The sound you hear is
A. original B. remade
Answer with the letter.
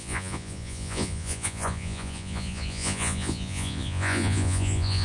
B